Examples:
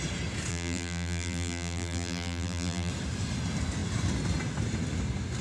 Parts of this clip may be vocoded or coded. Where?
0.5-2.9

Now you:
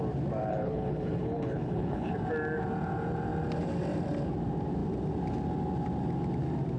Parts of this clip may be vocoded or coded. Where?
0.5-2.1

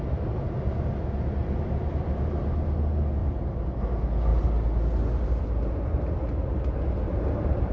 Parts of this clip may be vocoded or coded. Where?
1.4-2.4; 3.2-3.8

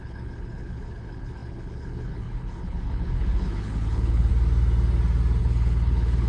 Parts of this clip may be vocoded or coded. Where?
0.0-4.3; 5.4-6.3

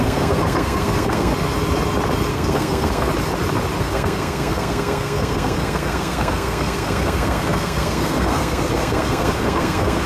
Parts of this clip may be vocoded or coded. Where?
0.0-1.3; 2.3-3.1; 3.8-10.1